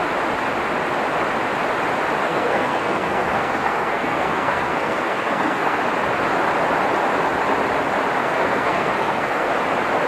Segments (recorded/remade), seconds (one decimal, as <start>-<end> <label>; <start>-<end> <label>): 0.0-2.2 recorded; 2.2-5.8 remade; 5.8-8.2 recorded; 8.2-9.5 remade; 9.5-10.1 recorded